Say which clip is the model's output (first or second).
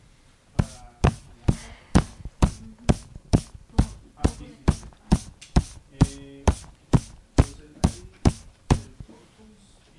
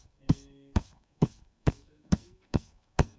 second